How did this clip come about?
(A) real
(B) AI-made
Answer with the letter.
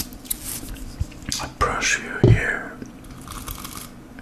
A